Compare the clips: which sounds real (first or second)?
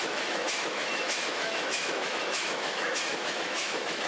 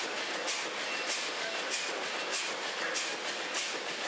second